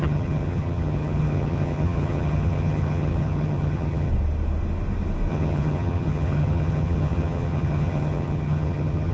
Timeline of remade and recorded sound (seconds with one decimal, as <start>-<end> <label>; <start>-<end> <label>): 0.0-4.1 remade; 4.1-5.3 recorded; 5.3-9.1 remade